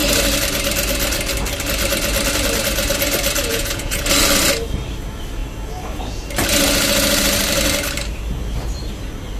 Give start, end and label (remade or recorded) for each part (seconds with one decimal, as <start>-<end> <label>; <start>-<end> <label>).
0.0-3.5 recorded; 3.5-4.0 remade; 4.0-9.4 recorded